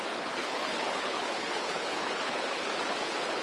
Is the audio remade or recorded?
remade